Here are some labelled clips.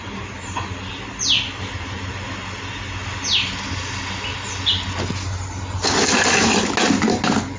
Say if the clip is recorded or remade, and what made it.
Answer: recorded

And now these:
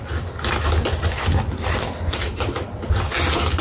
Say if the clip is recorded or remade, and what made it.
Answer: recorded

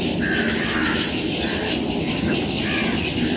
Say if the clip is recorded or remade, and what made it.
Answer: recorded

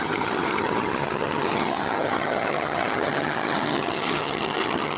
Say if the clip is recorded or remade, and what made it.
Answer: remade, vocoder, HiFi-GAN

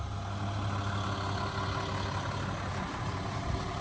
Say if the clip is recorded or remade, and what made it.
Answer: recorded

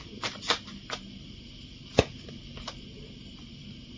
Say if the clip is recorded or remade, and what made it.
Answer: recorded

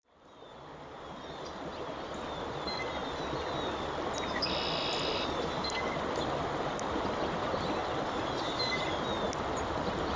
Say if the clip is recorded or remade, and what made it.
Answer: recorded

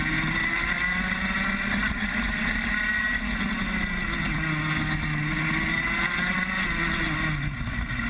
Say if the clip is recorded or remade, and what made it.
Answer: recorded